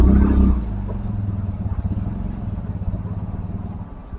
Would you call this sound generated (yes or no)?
no